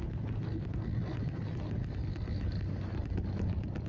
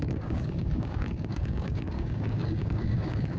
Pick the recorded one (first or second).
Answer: first